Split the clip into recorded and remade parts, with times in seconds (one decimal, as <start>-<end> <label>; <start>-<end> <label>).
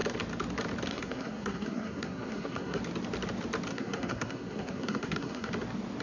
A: 0.0-0.9 recorded; 0.9-2.8 remade; 2.8-3.7 recorded; 3.7-5.5 remade; 5.5-6.0 recorded